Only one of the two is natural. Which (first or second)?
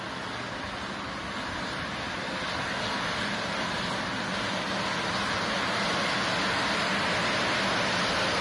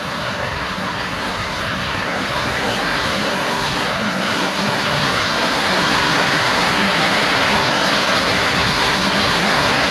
first